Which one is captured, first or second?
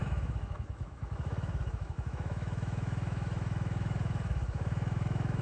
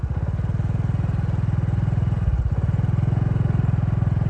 second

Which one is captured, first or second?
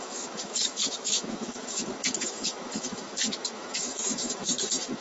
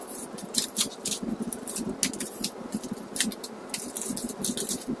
second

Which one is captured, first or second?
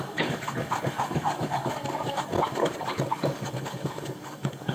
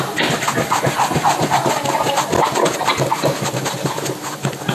second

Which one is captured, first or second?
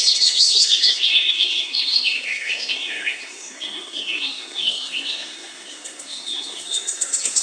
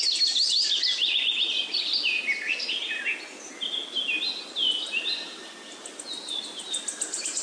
second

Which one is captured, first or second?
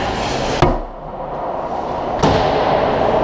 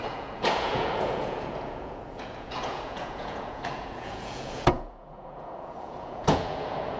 first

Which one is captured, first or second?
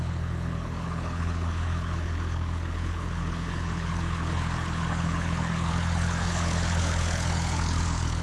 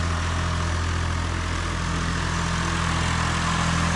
second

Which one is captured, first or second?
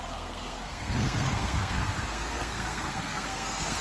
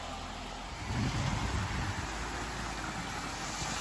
second